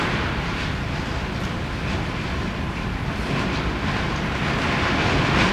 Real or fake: real